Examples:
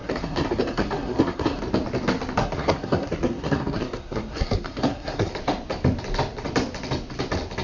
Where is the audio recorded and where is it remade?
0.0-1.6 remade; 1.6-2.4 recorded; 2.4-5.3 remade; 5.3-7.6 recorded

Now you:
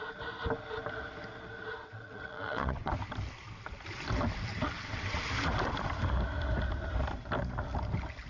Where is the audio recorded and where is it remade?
0.0-1.8 recorded; 1.8-2.9 remade; 2.9-4.5 recorded; 4.5-5.2 remade; 5.2-8.3 recorded

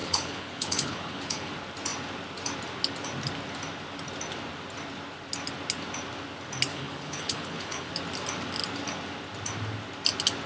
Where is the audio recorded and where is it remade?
0.0-1.5 remade; 1.5-6.7 recorded; 6.7-7.9 remade; 7.9-10.5 recorded